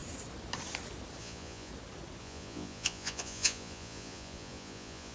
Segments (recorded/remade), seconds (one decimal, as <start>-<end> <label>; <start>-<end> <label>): 0.0-1.2 recorded; 1.2-1.7 remade; 1.7-2.2 recorded; 2.2-5.1 remade